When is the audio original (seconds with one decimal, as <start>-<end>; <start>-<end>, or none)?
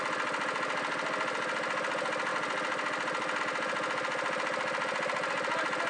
0.0-5.9